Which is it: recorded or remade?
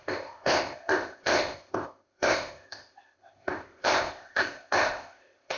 remade